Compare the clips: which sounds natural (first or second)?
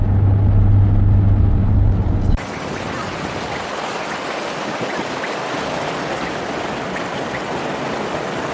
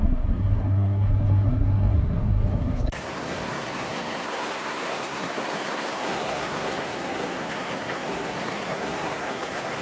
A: first